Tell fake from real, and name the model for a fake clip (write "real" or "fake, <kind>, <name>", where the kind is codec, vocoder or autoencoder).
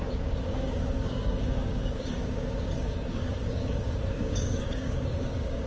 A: fake, codec, DAC